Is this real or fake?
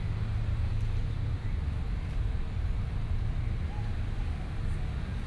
real